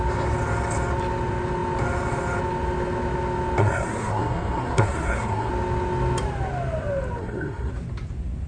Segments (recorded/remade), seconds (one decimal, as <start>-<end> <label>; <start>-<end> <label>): 0.0-3.6 recorded; 3.6-5.5 remade; 5.5-7.2 recorded; 7.2-7.7 remade; 7.7-8.5 recorded